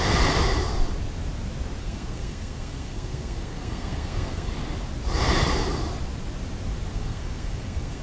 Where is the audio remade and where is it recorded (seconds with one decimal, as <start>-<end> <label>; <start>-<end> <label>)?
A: 0.0-1.8 recorded; 1.8-4.5 remade; 4.5-6.9 recorded; 6.9-8.0 remade